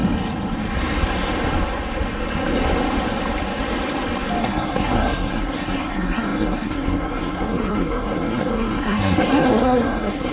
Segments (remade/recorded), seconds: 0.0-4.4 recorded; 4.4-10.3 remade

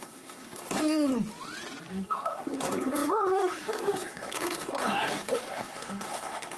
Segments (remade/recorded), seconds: 0.0-1.1 remade; 1.1-1.9 recorded; 1.9-6.6 remade

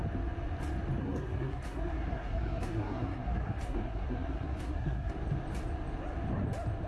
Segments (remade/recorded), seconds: 0.0-1.0 recorded; 1.0-5.1 remade; 5.1-6.9 recorded

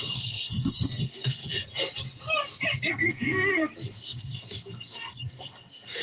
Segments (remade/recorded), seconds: 0.0-1.4 remade; 1.4-2.9 recorded; 2.9-6.0 remade

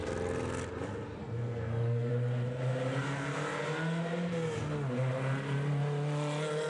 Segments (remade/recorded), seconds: 0.0-1.2 recorded; 1.2-2.1 remade; 2.1-6.7 recorded